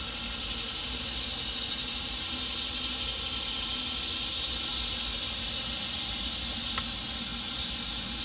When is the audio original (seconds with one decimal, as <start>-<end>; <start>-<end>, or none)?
0.0-8.2